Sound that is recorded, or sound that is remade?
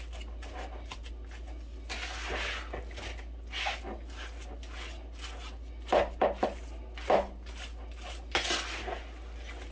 recorded